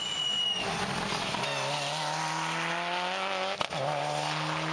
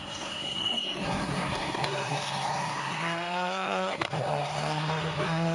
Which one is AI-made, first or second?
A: second